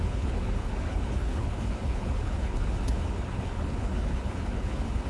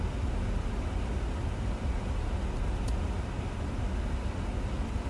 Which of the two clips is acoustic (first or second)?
second